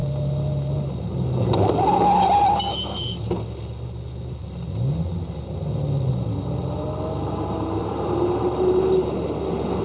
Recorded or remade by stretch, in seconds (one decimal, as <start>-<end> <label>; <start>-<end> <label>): 0.0-7.8 recorded; 7.8-8.7 remade; 8.7-9.8 recorded